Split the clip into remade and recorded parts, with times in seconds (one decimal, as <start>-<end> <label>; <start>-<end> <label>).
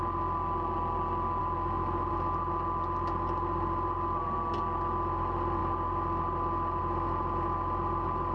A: 0.0-8.3 recorded